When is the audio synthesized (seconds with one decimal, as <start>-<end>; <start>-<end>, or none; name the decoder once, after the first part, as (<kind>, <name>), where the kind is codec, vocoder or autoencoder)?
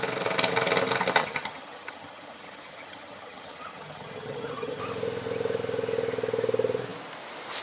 1.2-4.8 (vocoder, HiFi-GAN)